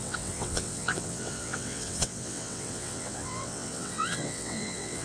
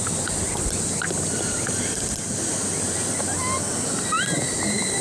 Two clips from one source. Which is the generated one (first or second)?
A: first